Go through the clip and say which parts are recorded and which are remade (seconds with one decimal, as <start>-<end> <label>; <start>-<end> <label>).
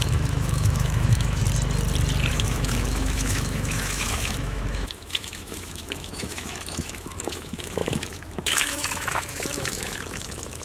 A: 0.0-1.4 remade; 1.4-2.3 recorded; 2.3-10.6 remade